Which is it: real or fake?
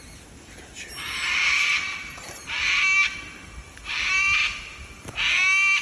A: real